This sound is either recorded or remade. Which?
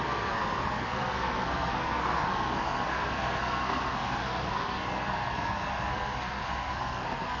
remade